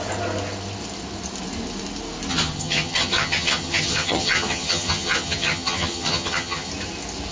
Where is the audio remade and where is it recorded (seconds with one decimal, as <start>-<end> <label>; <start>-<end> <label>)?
0.0-2.3 recorded; 2.3-6.7 remade; 6.7-7.3 recorded